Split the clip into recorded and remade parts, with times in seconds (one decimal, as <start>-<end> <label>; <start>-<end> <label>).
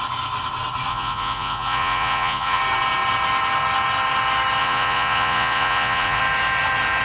0.0-0.9 recorded; 0.9-2.6 remade; 2.6-4.6 recorded; 4.6-6.2 remade; 6.2-7.0 recorded